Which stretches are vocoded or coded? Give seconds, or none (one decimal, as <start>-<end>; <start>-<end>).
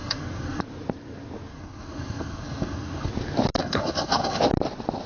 0.0-0.6; 1.5-3.1; 3.6-4.4